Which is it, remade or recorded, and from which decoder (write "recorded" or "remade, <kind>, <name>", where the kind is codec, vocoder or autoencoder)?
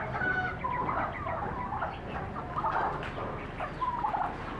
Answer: recorded